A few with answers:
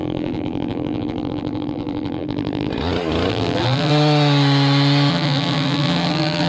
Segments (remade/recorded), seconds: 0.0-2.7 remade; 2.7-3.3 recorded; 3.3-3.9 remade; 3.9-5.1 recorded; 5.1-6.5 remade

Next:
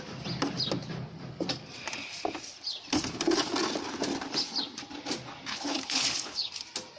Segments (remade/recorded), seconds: 0.0-5.5 recorded; 5.5-6.5 remade; 6.5-7.0 recorded

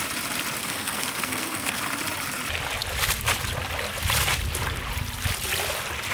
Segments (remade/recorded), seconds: 0.0-0.6 recorded; 0.6-1.8 remade; 1.8-6.1 recorded